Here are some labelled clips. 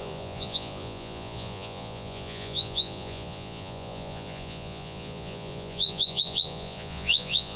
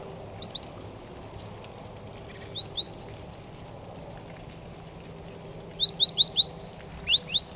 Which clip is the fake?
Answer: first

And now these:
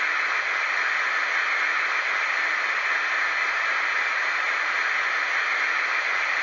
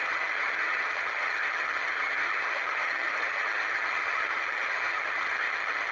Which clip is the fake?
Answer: second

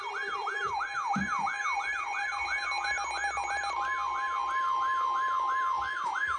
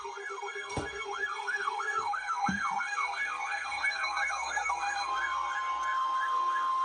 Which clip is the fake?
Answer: second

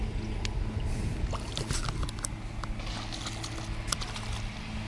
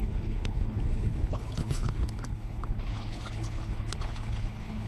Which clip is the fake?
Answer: second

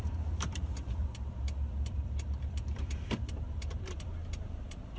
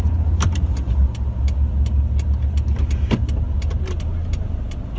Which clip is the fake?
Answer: first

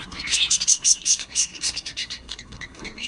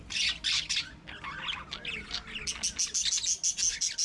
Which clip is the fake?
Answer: first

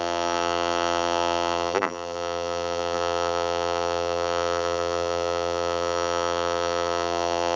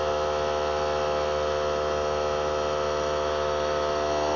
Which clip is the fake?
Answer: first